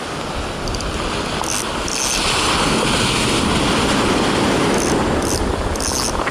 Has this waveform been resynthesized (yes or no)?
no